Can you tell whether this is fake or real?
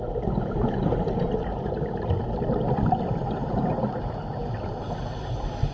real